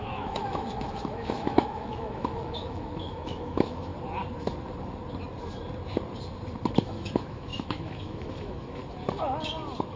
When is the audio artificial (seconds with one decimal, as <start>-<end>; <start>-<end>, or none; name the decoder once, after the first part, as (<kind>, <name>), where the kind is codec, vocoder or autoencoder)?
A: 0.0-3.9 (autoencoder, DAC-VAE); 6.8-8.8